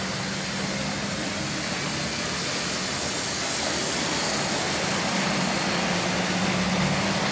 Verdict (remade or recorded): recorded